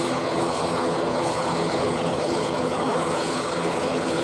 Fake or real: fake